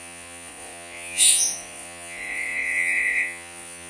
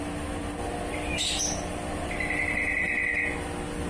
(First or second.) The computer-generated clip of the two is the first